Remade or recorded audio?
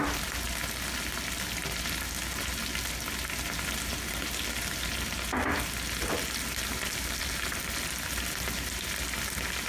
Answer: recorded